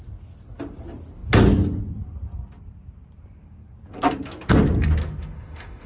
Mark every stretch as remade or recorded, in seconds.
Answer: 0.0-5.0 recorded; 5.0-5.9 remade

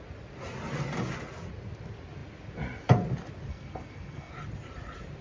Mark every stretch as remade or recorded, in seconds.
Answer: 0.0-3.5 recorded; 3.5-4.3 remade; 4.3-5.2 recorded

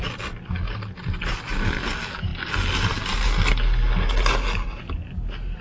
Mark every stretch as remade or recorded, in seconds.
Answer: 0.0-5.6 recorded

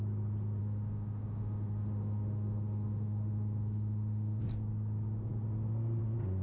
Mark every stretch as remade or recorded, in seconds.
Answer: 0.0-0.6 recorded; 0.6-4.4 remade; 4.4-6.4 recorded

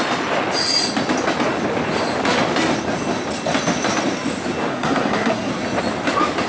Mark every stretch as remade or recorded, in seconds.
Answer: 0.0-4.7 recorded; 4.7-5.5 remade; 5.5-6.5 recorded

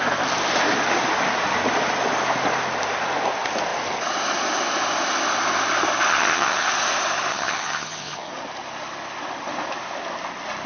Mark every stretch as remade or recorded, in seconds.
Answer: 0.0-6.1 recorded; 6.1-6.7 remade; 6.7-7.3 recorded; 7.3-8.3 remade; 8.3-10.7 recorded

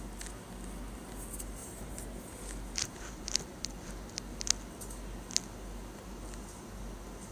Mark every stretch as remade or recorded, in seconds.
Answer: 0.0-1.6 recorded; 1.6-2.2 remade; 2.2-2.8 recorded; 2.8-4.1 remade; 4.1-7.3 recorded